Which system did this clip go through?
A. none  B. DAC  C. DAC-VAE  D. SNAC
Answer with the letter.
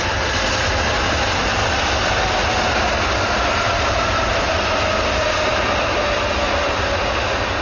A